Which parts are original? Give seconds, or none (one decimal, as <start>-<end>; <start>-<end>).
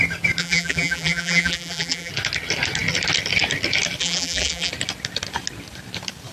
0.0-0.4; 2.1-4.0; 4.7-6.3